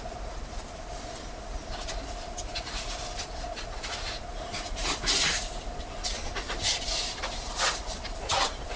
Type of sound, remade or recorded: recorded